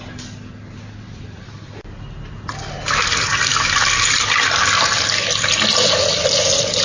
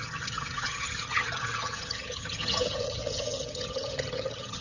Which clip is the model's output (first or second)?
second